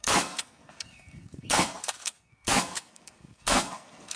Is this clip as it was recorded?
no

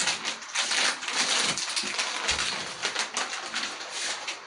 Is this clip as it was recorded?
yes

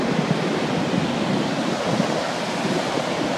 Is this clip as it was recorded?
yes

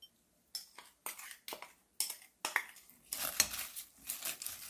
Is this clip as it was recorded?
yes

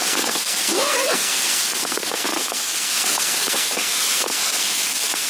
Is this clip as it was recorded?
no